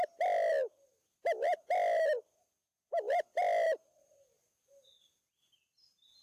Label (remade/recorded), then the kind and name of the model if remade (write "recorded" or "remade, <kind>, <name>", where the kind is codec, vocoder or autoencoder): recorded